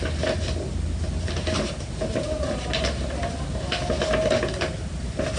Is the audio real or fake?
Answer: real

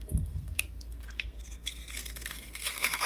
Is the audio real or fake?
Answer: fake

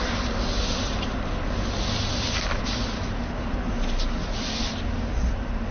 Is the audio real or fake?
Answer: real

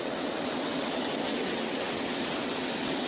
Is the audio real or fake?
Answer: fake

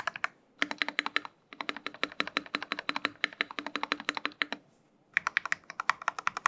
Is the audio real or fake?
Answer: real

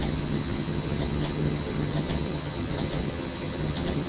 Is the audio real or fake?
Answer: fake